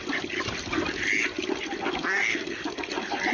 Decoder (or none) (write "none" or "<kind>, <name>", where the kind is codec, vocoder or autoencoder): none